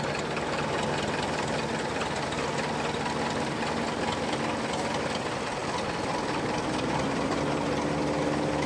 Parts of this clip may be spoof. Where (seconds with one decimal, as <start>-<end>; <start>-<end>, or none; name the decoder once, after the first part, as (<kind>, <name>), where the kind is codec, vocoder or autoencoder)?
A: 5.6-7.4 (vocoder, BigVGAN v2)